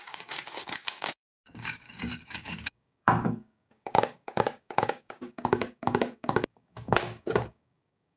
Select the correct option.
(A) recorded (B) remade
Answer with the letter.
B